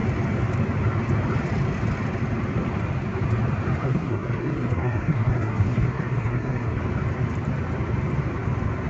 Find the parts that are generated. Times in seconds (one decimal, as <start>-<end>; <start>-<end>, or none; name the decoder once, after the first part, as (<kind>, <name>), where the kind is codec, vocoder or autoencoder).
3.8-6.8 (codec, SNAC)